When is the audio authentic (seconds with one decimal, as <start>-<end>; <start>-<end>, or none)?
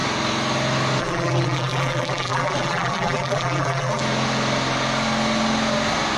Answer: 0.0-1.0; 4.0-6.2